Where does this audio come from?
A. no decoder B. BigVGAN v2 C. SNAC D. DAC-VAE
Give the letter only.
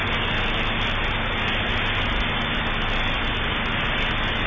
A